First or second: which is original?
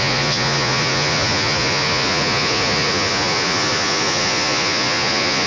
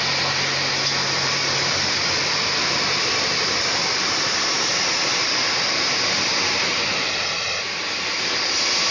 second